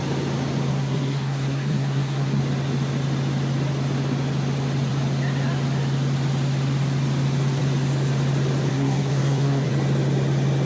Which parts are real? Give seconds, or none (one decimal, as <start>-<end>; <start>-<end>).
0.0-0.7; 2.4-8.7; 9.7-10.7